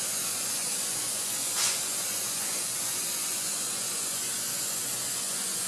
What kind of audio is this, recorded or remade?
remade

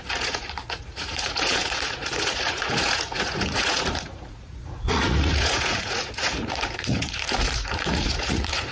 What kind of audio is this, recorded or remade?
remade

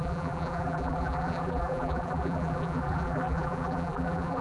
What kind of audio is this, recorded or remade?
remade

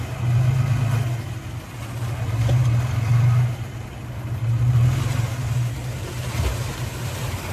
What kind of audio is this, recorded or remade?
recorded